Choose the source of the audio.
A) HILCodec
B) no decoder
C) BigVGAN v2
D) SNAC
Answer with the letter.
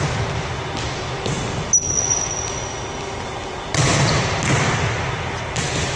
B